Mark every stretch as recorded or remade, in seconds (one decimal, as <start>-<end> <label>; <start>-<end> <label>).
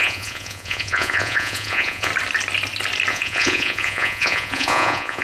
0.0-2.1 remade; 2.1-3.1 recorded; 3.1-5.2 remade